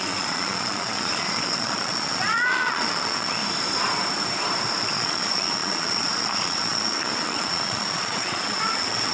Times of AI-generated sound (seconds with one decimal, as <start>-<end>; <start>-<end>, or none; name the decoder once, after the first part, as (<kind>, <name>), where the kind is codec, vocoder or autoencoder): 0.0-3.4 (vocoder, Vocos); 4.8-9.1